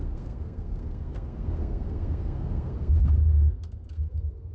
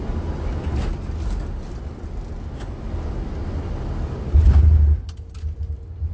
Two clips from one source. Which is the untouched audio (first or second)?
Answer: second